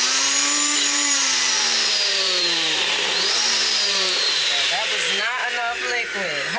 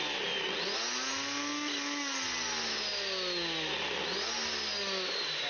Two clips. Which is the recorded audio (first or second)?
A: second